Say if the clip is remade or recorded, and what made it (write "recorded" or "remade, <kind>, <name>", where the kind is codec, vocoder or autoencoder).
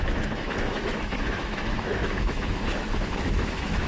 remade, autoencoder, DAC-VAE